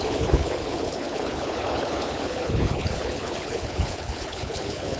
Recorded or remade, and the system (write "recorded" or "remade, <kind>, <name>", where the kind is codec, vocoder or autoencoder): remade, codec, HILCodec